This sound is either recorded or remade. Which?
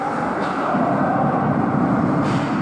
recorded